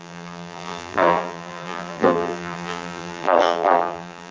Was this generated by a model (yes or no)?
yes